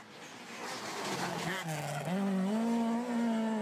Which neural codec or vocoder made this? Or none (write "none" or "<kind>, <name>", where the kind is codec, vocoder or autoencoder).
none